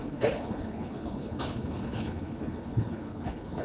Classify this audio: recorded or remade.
remade